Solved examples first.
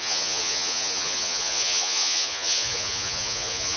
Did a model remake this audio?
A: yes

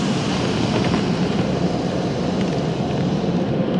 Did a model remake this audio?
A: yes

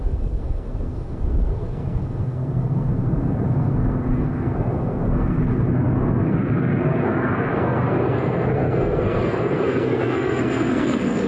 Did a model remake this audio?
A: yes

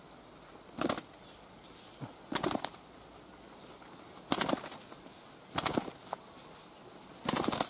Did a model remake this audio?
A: no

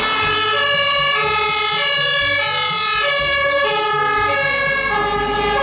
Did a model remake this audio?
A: no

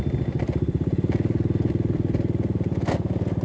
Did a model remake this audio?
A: no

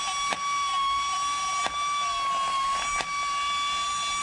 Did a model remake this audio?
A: no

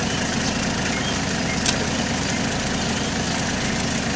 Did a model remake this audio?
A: no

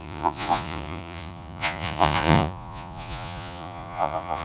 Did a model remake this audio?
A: yes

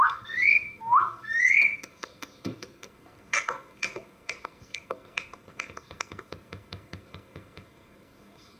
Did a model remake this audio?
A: yes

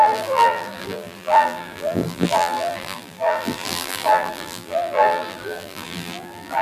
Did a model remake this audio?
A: yes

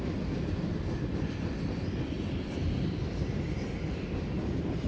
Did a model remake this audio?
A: no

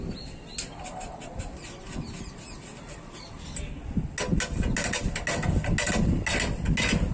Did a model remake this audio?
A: no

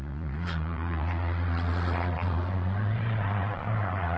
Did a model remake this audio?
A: yes